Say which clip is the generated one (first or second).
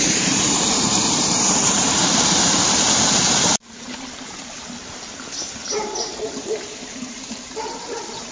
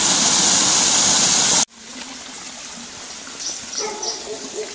first